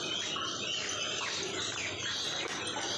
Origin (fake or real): real